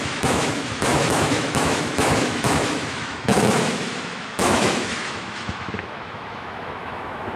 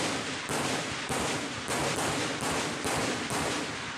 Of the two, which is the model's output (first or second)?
first